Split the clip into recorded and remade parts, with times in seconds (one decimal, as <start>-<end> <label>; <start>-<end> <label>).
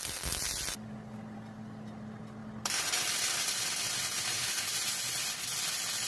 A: 0.0-6.1 recorded